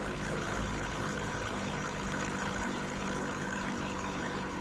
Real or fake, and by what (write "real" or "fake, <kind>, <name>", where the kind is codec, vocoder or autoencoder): fake, codec, HILCodec